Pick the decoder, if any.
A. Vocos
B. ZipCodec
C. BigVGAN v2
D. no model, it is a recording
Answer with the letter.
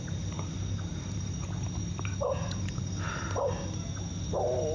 D